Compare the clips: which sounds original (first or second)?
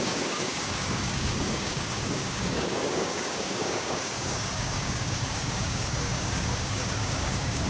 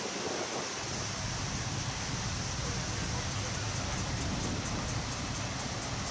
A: second